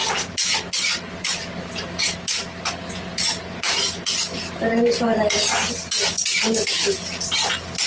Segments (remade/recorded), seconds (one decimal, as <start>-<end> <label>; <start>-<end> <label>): 0.0-7.9 recorded